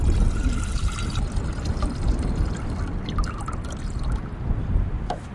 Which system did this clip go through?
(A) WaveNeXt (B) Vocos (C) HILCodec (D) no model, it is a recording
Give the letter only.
D